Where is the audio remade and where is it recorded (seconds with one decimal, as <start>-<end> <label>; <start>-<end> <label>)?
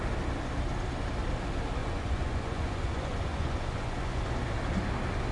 0.0-1.8 recorded; 1.8-4.2 remade; 4.2-5.3 recorded